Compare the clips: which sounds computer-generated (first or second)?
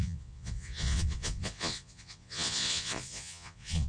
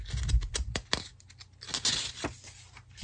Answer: first